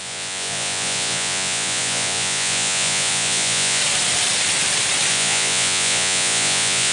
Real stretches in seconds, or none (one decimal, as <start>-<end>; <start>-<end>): 3.8-5.1